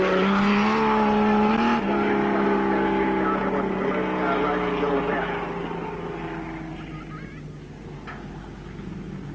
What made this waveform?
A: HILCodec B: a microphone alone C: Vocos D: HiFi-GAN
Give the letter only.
B